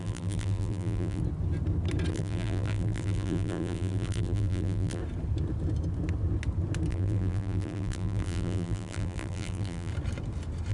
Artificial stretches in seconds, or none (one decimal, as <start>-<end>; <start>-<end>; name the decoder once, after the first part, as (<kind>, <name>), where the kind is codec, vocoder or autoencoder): 0.0-1.2 (vocoder, BigVGAN v2); 2.1-5.0; 6.9-9.9